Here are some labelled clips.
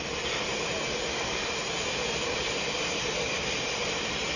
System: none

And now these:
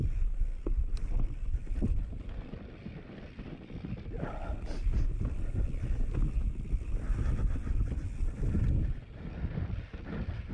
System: none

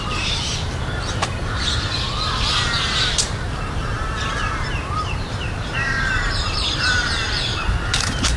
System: vocoder, BigVGAN v2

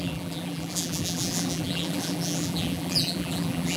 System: vocoder, BigVGAN v2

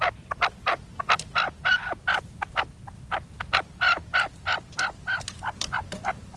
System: vocoder, BigVGAN v2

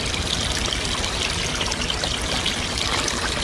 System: none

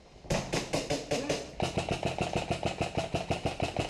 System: none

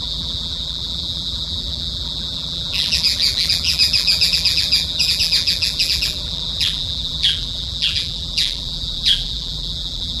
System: vocoder, BigVGAN v2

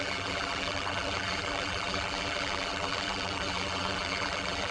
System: vocoder, BigVGAN v2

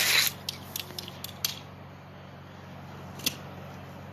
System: none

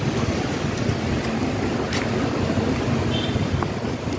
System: none